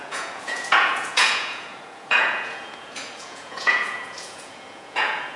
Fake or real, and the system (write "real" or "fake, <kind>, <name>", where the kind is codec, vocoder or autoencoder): fake, vocoder, Vocos